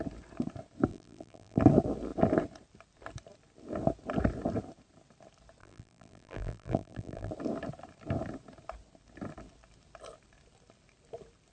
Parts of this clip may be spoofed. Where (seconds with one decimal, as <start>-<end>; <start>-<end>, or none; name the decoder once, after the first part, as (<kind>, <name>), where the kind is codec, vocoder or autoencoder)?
0.9-1.6 (vocoder, BigVGAN v2); 5.6-7.3